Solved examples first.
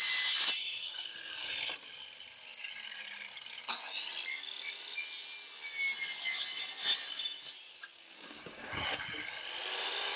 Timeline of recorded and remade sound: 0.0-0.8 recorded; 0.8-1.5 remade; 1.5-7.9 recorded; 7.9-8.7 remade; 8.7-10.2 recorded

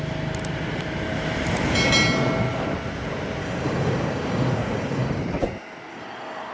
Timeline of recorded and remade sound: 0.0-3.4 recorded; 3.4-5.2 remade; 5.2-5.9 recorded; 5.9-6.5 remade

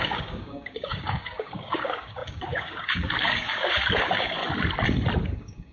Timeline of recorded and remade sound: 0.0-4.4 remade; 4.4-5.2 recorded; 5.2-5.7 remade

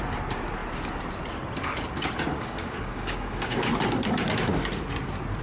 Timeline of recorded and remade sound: 0.0-2.3 recorded; 2.3-3.7 remade; 3.7-5.4 recorded

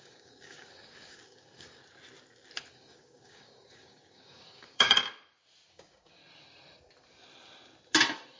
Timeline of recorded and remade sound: 0.0-1.8 remade; 1.8-2.7 recorded; 2.7-5.0 remade; 5.0-5.7 recorded; 5.7-6.2 remade; 6.2-8.4 recorded

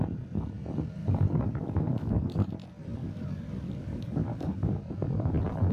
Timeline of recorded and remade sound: 0.0-1.0 recorded; 1.0-2.5 remade; 2.5-3.0 recorded; 3.0-4.8 remade; 4.8-5.7 recorded

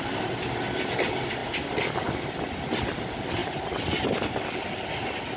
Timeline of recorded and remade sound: 0.0-5.4 recorded